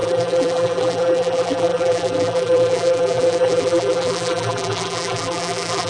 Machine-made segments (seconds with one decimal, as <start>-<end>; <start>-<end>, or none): 0.0-5.9